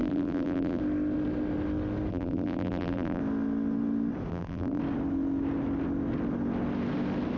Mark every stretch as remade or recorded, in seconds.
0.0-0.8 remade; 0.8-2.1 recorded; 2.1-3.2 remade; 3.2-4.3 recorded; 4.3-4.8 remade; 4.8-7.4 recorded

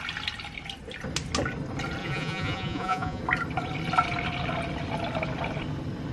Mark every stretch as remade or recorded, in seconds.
0.0-2.0 recorded; 2.0-3.2 remade; 3.2-6.1 recorded

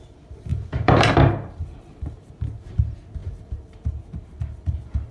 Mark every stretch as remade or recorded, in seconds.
0.0-0.5 recorded; 0.5-2.3 remade; 2.3-3.2 recorded; 3.2-5.1 remade

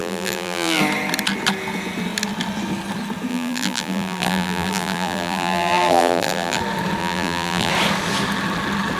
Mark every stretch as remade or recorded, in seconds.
0.0-0.8 remade; 0.8-3.3 recorded; 3.3-6.6 remade; 6.6-7.0 recorded; 7.0-7.7 remade; 7.7-9.0 recorded

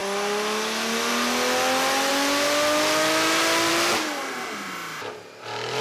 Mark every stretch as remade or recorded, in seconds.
0.0-5.8 recorded

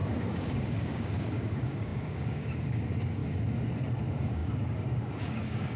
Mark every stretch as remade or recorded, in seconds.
0.0-3.2 remade; 3.2-4.0 recorded; 4.0-5.8 remade

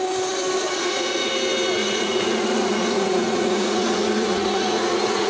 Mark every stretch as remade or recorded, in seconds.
0.0-0.8 recorded; 0.8-1.3 remade; 1.3-1.8 recorded; 1.8-5.3 remade

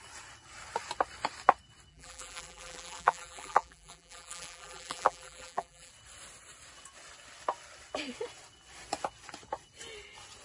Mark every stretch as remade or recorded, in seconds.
0.0-1.9 recorded; 1.9-5.9 remade; 5.9-10.4 recorded